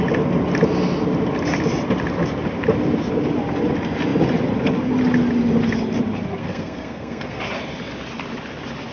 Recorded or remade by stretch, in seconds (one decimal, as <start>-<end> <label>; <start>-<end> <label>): 0.0-6.4 recorded; 6.4-7.4 remade; 7.4-8.9 recorded